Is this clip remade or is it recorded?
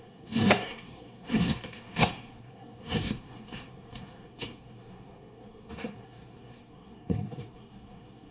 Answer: remade